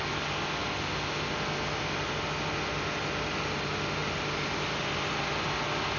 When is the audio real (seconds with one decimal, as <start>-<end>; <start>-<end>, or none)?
0.0-6.0